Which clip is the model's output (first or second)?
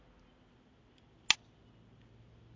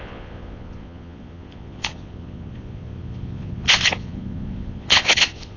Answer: second